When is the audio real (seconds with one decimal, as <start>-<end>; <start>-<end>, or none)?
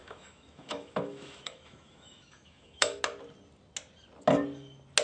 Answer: 3.0-5.0